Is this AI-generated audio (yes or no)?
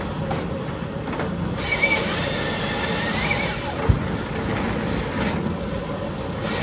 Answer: no